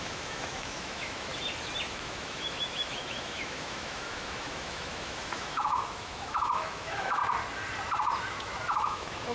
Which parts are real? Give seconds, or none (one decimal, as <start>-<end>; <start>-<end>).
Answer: 1.3-1.9; 7.2-8.3